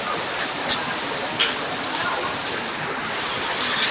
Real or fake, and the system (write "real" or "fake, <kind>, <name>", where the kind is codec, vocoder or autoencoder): real